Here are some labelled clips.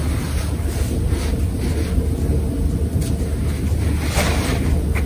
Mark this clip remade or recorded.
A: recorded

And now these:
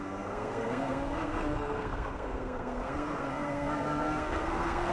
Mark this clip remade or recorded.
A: remade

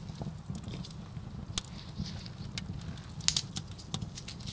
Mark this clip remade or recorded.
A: recorded